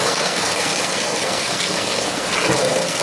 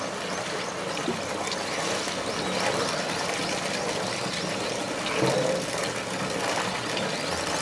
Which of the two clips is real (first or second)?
second